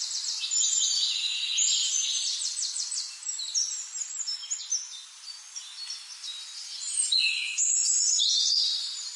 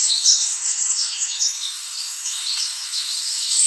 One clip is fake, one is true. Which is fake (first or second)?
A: second